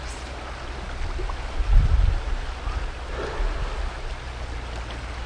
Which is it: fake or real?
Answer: real